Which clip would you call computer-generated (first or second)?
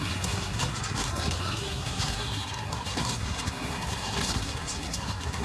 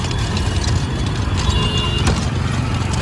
first